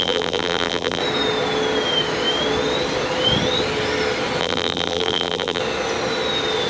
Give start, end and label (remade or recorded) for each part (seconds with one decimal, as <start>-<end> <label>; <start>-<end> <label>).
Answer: 0.0-1.0 remade; 1.0-4.4 recorded; 4.4-5.6 remade; 5.6-6.7 recorded